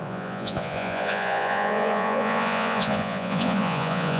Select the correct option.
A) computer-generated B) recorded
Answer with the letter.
A